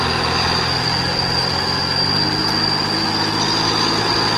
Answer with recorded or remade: recorded